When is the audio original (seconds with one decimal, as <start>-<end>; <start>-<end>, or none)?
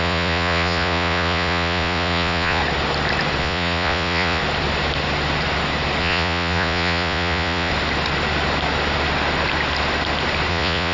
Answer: 2.6-3.4; 4.4-6.0; 7.7-10.5